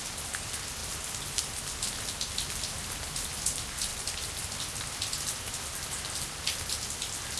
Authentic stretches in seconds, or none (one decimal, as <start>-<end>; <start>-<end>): 0.0-7.4